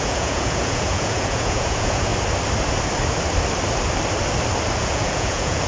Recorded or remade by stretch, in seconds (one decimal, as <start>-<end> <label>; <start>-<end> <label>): 0.0-2.1 remade; 2.1-4.8 recorded; 4.8-5.7 remade